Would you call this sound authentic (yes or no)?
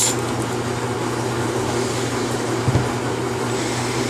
yes